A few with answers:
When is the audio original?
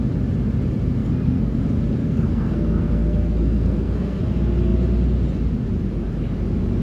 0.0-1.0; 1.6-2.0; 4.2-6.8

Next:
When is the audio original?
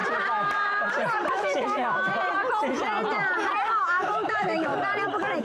0.0-1.3; 2.1-3.8; 4.7-5.4